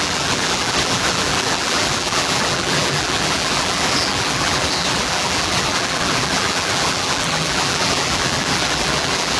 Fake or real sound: fake